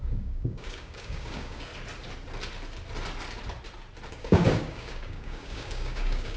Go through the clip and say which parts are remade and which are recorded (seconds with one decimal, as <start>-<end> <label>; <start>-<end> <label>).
0.0-1.7 remade; 1.7-4.1 recorded; 4.1-6.4 remade